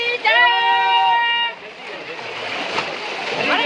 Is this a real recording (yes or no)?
yes